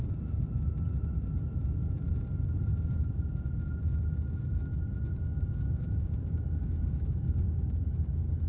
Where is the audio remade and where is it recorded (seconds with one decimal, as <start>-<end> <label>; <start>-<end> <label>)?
0.0-5.1 recorded; 5.1-7.9 remade; 7.9-8.5 recorded